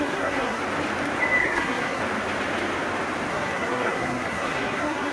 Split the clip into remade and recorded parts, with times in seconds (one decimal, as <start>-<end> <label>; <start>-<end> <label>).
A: 0.0-0.6 remade; 0.6-1.4 recorded; 1.4-2.0 remade; 2.0-3.3 recorded; 3.3-5.1 remade